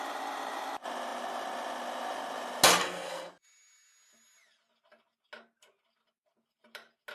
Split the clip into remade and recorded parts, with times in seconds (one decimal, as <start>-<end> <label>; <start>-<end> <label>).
0.0-2.8 recorded; 2.8-3.3 remade; 3.3-7.1 recorded